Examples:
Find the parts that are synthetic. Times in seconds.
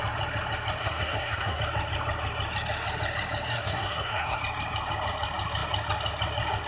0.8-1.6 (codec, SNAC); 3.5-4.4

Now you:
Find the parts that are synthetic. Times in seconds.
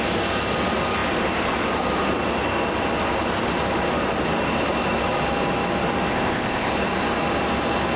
6.1-6.7 (codec, ZipCodec)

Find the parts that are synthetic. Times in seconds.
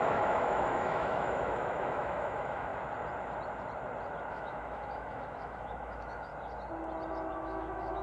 0.0-2.7 (autoencoder, DAC-VAE); 4.3-6.3; 7.3-8.0